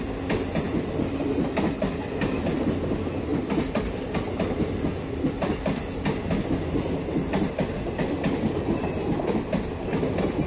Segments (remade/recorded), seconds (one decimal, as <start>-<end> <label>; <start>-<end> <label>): 0.0-3.3 recorded; 3.3-5.5 remade; 5.5-10.5 recorded